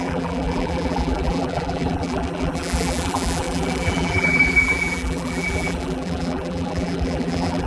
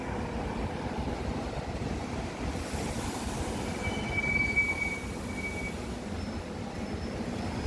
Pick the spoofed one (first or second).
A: first